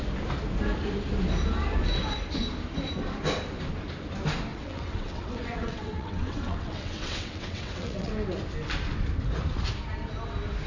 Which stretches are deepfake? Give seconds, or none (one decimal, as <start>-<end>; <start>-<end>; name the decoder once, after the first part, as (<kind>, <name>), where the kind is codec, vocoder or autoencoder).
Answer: 4.5-8.1 (vocoder, WaveNeXt)